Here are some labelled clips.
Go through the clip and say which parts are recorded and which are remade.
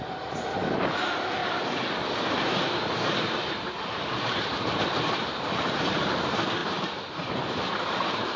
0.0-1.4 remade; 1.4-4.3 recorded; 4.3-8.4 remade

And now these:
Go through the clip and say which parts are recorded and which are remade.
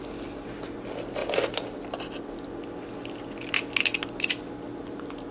0.0-5.3 recorded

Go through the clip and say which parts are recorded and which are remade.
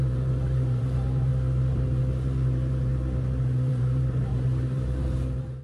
0.0-1.3 remade; 1.3-2.0 recorded; 2.0-2.9 remade; 2.9-3.7 recorded; 3.7-5.6 remade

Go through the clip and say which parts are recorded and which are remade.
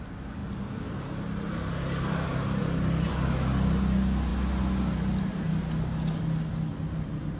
0.0-6.7 recorded; 6.7-7.4 remade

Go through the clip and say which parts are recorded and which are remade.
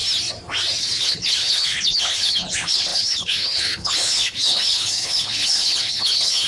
0.0-0.8 recorded; 0.8-6.5 remade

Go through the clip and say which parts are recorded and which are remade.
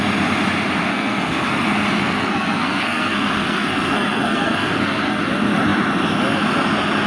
0.0-0.9 recorded; 0.9-1.5 remade; 1.5-2.0 recorded; 2.0-5.2 remade; 5.2-7.1 recorded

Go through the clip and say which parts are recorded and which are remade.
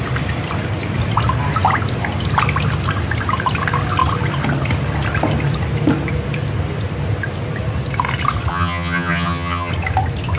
0.0-8.5 recorded; 8.5-9.7 remade; 9.7-10.4 recorded